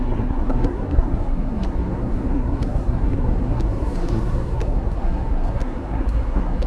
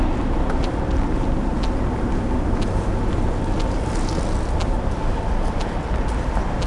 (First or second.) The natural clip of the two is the second